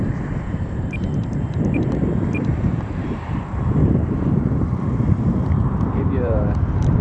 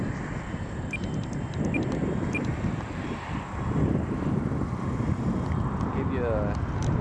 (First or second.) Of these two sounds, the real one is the second